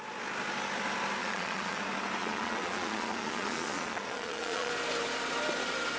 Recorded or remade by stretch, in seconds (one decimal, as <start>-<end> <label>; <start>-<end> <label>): 0.0-1.2 recorded; 1.2-1.8 remade; 1.8-2.2 recorded; 2.2-4.7 remade; 4.7-6.0 recorded